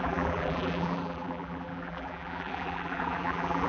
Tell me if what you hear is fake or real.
fake